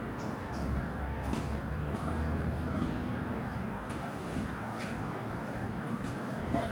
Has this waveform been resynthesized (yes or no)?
yes